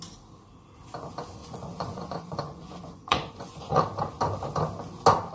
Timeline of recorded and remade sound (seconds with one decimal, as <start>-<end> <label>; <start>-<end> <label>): 0.0-1.4 recorded; 1.4-3.8 remade; 3.8-5.3 recorded